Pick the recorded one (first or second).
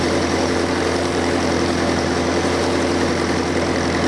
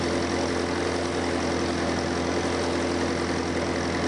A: second